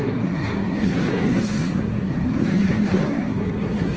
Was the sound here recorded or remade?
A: remade